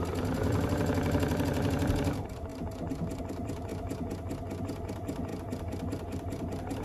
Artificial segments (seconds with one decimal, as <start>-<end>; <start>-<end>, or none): 0.0-2.5; 3.2-3.7; 4.6-6.8